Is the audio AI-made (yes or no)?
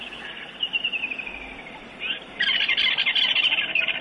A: yes